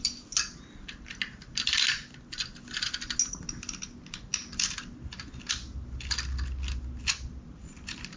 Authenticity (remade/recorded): recorded